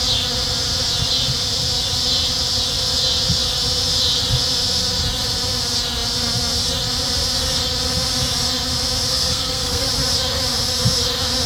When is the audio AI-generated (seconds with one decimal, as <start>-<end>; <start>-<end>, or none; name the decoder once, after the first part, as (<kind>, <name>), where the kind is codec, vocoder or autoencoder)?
9.1-9.9 (codec, SNAC)